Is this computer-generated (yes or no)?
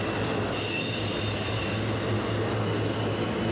no